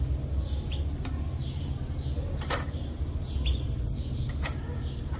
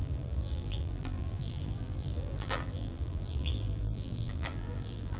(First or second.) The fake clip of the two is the second